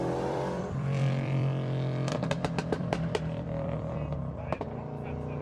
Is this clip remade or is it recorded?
remade